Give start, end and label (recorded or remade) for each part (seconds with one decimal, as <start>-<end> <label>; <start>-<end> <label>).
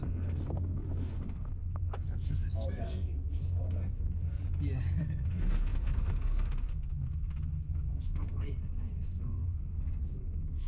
0.0-4.4 remade; 4.4-5.0 recorded; 5.0-10.7 remade